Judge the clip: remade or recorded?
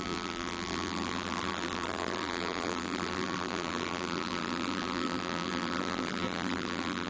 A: remade